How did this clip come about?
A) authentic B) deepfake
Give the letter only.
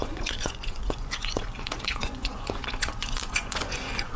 B